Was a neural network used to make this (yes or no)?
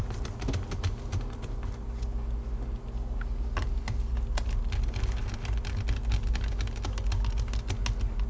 no